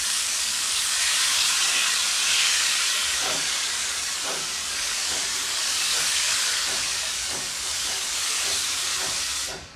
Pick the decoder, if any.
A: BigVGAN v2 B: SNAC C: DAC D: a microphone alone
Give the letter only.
C